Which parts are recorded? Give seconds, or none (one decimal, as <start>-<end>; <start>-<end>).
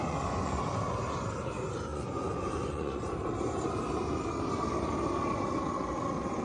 0.6-1.9; 3.0-6.4